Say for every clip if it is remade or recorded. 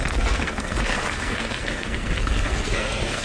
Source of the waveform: remade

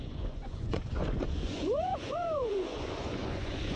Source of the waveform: remade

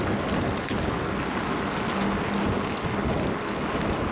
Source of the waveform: recorded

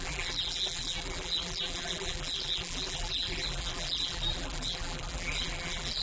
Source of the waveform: remade